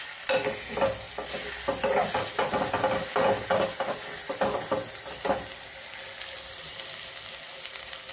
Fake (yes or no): no